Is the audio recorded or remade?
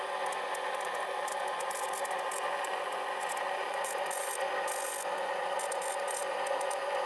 remade